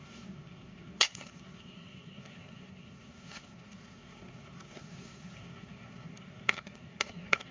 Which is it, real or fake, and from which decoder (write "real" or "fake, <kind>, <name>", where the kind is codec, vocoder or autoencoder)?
fake, codec, SNAC